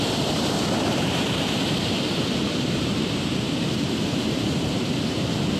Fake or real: fake